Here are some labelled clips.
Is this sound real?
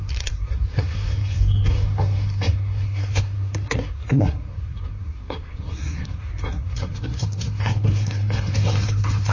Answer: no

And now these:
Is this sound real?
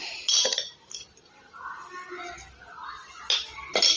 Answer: yes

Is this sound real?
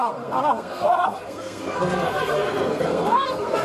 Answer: no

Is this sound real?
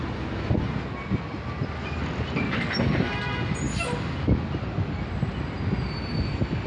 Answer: yes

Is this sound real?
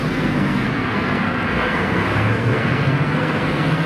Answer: no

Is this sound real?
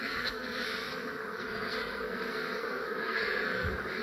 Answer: no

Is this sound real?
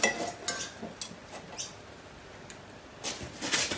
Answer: yes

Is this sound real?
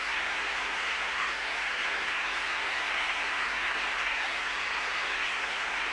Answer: no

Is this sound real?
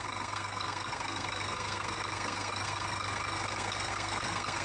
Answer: no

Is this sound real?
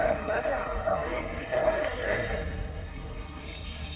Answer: no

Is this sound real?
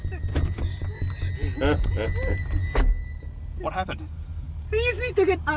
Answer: yes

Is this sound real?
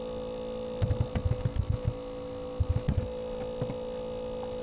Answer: yes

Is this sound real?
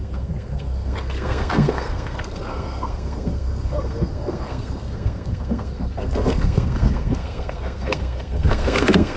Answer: no